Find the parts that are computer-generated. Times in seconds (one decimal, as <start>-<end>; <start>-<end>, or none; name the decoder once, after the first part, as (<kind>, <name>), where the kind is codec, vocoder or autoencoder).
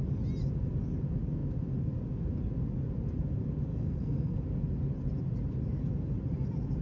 3.7-4.4 (codec, SNAC)